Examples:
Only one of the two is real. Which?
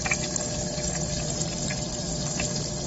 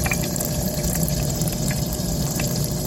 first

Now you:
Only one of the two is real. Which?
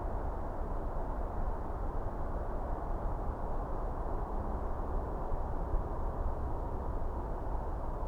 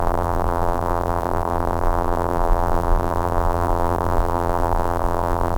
first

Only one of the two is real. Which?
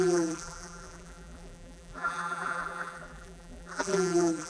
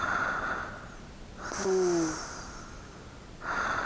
second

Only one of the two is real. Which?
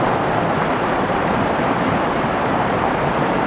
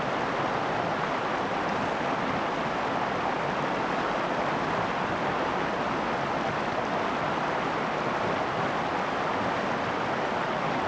second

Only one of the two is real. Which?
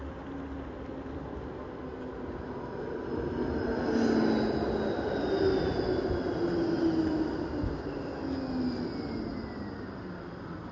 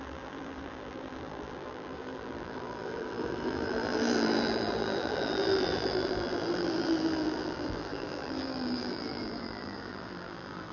first